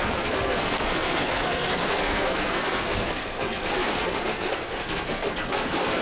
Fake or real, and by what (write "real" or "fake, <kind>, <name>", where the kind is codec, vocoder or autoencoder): fake, codec, SNAC